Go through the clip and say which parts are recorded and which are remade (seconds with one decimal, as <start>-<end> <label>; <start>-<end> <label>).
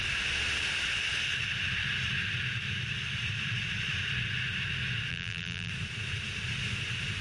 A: 0.0-5.1 recorded; 5.1-5.7 remade; 5.7-7.2 recorded